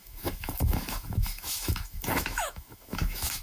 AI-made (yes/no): yes